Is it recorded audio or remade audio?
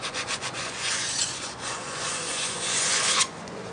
remade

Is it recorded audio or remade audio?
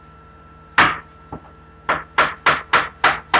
recorded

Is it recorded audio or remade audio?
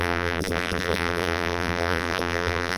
remade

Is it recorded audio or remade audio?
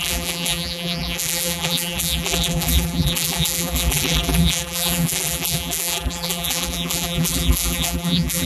remade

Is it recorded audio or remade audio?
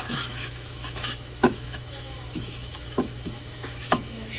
remade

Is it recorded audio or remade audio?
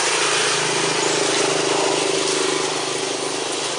recorded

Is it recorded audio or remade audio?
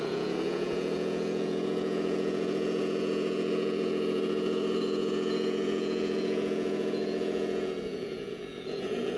remade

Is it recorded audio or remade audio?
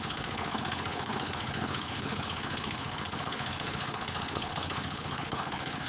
remade